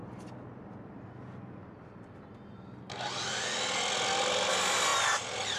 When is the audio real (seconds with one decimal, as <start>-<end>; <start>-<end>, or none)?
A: 0.0-5.6